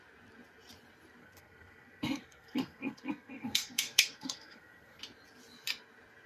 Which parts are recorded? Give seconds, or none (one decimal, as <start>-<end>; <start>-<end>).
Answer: 0.0-1.2; 5.0-6.3